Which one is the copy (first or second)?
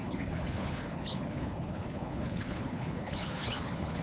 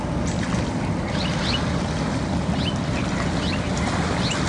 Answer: first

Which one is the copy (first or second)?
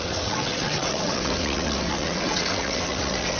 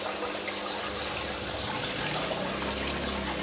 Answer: first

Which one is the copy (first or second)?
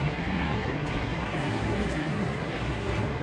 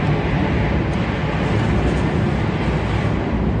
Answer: first